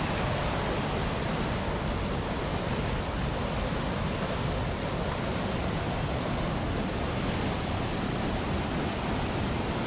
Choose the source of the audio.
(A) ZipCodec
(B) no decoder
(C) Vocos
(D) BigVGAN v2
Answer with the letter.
B